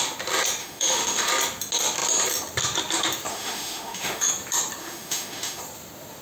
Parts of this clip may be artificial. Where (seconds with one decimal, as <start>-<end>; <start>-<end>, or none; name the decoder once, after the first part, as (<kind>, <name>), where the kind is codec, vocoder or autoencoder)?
0.6-1.3 (autoencoder, DAC-VAE); 3.3-4.3; 4.8-5.6